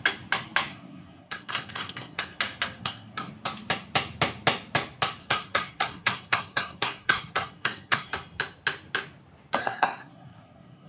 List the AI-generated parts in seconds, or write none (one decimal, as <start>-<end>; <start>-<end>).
0.7-2.4; 2.8-3.3; 5.2-8.1; 9.6-10.9